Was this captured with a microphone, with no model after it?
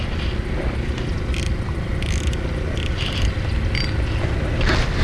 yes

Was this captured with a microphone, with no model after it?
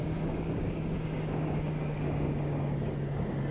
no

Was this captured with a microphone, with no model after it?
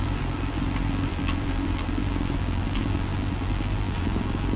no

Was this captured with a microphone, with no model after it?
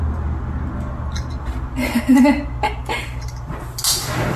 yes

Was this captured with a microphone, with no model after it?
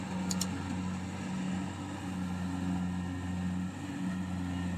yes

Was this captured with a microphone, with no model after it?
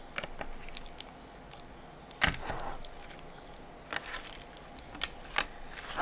yes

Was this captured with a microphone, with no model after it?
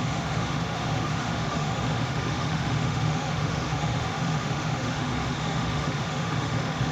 no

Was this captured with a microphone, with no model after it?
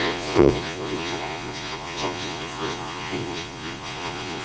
no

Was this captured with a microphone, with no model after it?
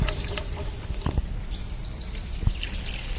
yes